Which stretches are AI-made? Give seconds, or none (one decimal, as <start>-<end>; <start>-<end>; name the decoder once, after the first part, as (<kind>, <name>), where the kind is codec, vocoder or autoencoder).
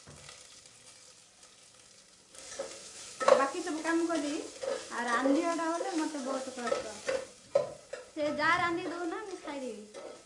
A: 2.8-3.7 (autoencoder, DAC-VAE); 5.5-6.7